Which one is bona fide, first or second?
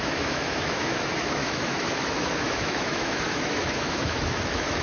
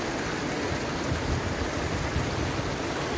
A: second